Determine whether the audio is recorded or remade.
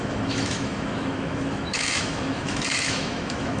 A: remade